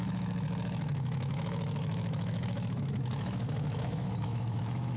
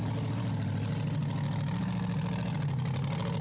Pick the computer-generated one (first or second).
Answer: first